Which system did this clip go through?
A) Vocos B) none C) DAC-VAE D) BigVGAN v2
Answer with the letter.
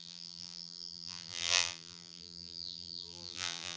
D